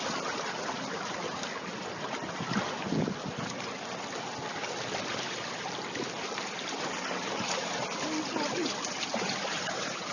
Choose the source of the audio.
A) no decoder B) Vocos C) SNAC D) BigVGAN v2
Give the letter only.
A